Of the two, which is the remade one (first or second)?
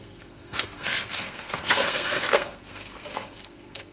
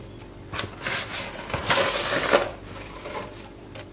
first